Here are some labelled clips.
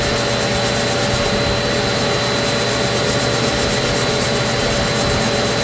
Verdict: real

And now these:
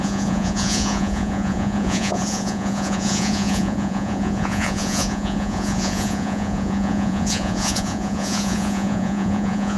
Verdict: fake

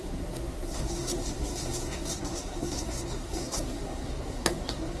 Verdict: fake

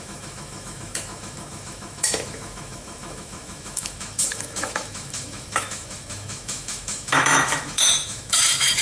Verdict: fake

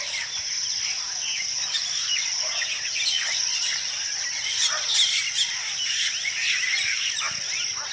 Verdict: real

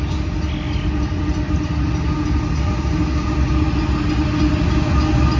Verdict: real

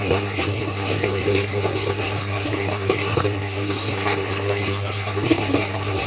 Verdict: fake